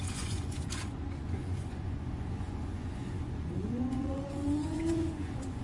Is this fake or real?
fake